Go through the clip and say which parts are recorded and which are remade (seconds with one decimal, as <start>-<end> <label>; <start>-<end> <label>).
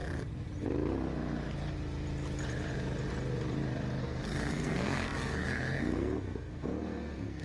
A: 0.0-4.0 recorded; 4.0-7.4 remade